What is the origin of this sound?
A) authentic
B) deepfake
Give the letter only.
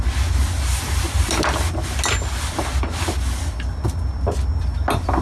A